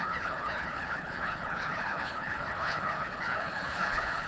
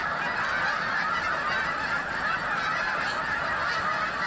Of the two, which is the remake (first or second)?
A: first